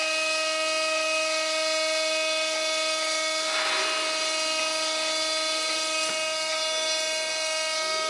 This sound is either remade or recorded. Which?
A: recorded